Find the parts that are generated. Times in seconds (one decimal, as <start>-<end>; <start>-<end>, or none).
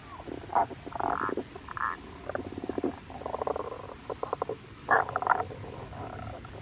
1.3-1.8; 4.6-6.6